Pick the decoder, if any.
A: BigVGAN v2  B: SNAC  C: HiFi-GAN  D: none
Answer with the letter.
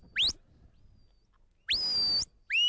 D